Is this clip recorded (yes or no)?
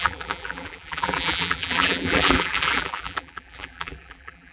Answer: no